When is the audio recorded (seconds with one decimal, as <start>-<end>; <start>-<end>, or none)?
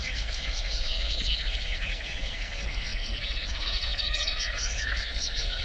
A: none